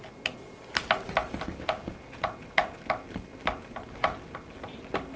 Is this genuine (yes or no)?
yes